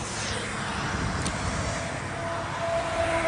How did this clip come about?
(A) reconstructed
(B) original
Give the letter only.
B